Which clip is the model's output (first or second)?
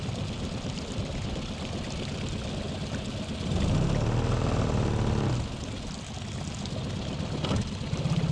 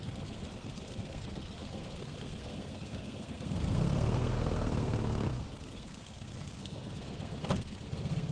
second